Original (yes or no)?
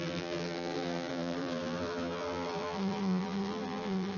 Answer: no